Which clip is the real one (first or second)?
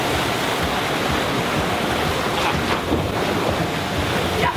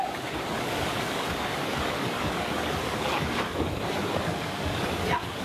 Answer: first